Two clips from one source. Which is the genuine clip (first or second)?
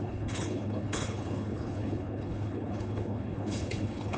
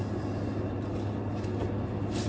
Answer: second